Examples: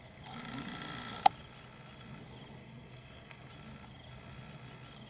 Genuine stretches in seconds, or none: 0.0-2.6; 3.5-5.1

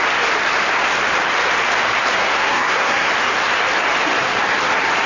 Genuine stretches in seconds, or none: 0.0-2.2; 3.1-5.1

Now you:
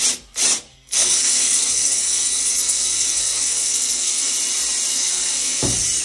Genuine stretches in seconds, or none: 0.0-0.7; 4.3-4.9; 5.6-6.0

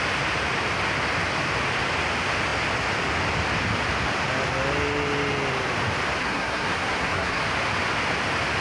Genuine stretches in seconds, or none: 0.0-6.2; 7.4-8.6

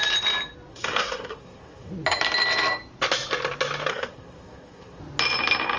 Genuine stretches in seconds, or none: 0.0-0.7; 1.9-3.9; 5.0-5.8